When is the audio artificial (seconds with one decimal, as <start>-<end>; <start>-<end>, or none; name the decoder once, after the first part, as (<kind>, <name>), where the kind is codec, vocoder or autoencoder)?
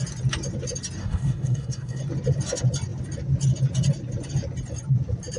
1.0-2.0 (codec, SNAC)